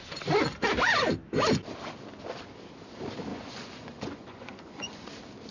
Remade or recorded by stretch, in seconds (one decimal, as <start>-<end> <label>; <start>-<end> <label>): 0.0-3.3 recorded; 3.3-5.1 remade; 5.1-5.5 recorded